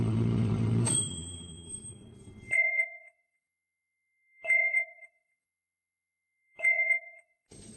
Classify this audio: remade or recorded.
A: remade